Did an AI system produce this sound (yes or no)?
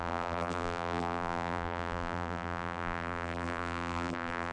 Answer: yes